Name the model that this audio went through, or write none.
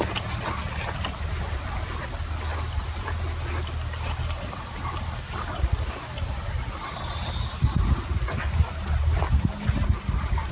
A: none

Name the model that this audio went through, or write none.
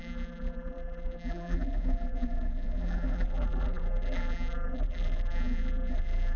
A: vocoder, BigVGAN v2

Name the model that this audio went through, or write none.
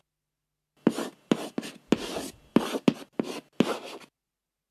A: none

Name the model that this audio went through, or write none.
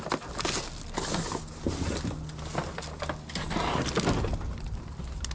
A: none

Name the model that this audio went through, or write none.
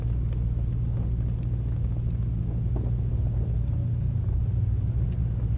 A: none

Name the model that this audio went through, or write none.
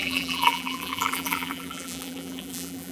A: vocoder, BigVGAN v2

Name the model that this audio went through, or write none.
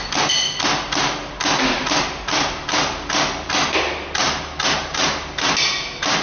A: none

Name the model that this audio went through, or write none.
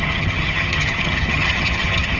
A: vocoder, HiFi-GAN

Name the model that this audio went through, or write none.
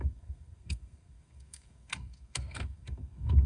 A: codec, SNAC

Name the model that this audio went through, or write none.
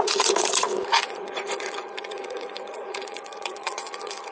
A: vocoder, Vocos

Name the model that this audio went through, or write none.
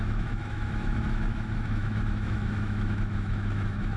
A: autoencoder, DAC-VAE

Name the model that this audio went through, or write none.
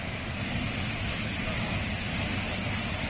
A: none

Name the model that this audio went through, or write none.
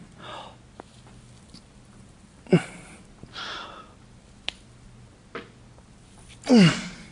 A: none